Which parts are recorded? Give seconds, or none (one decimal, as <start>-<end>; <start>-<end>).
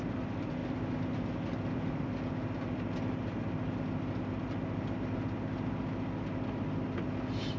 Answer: 0.0-7.6